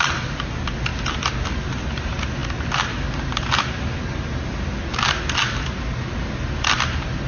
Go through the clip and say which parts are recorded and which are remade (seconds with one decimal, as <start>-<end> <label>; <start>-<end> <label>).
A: 0.0-2.4 remade; 2.4-6.6 recorded; 6.6-7.3 remade